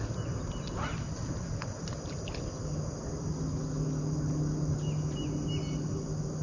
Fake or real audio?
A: real